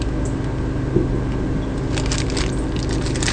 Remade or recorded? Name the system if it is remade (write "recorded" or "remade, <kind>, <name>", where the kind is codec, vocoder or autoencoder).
recorded